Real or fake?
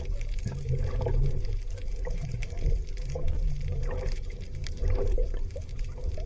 fake